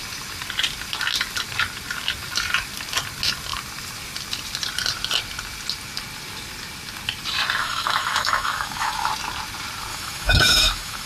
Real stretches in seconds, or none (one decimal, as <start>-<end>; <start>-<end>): 0.0-7.6; 9.1-9.9